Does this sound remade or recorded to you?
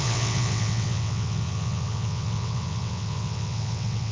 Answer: remade